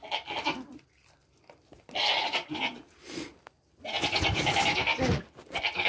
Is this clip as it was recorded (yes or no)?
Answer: yes